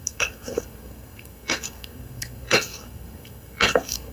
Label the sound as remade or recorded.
remade